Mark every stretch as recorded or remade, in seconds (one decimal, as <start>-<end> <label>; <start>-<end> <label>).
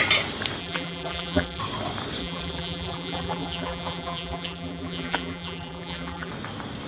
0.0-0.6 recorded; 0.6-1.6 remade; 1.6-2.2 recorded; 2.2-6.3 remade; 6.3-6.9 recorded